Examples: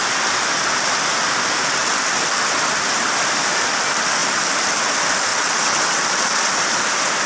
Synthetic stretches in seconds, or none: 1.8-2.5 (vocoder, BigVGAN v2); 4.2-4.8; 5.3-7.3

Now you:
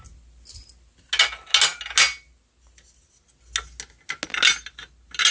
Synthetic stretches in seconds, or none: none